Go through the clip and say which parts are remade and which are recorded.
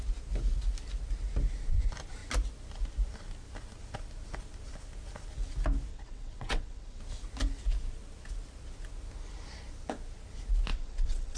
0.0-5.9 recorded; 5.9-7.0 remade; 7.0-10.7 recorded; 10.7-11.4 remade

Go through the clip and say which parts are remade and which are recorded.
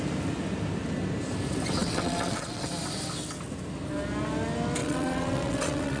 0.0-1.8 recorded; 1.8-2.7 remade; 2.7-4.8 recorded; 4.8-6.0 remade